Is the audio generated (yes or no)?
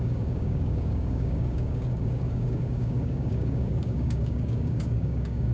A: yes